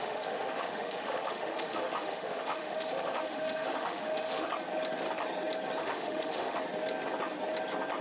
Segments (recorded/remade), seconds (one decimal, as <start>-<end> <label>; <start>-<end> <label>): 0.0-4.5 remade; 4.5-5.8 recorded; 5.8-6.6 remade; 6.6-8.0 recorded